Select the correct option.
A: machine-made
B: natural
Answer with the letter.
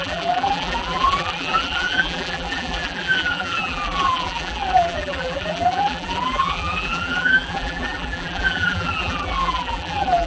A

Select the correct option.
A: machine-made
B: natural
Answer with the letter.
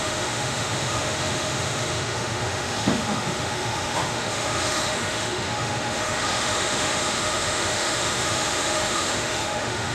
A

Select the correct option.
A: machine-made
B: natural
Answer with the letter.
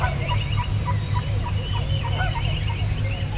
B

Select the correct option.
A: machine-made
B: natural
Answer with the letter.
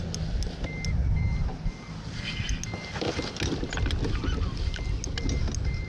B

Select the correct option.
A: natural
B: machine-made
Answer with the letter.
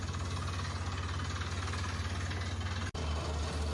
A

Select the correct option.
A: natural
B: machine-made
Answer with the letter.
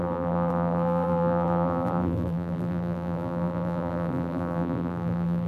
B